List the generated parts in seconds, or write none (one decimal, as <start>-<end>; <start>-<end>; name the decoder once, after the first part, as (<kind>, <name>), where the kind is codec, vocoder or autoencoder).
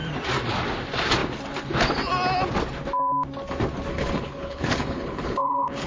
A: 3.9-5.9 (codec, HILCodec)